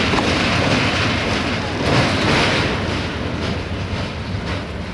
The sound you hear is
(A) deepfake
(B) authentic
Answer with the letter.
B